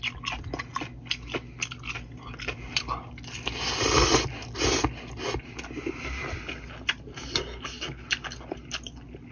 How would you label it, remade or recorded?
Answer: recorded